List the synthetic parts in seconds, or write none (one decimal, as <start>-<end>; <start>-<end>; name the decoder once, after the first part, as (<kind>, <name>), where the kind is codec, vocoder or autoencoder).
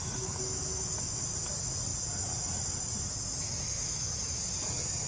0.0-1.2 (autoencoder, DAC-VAE); 3.7-4.4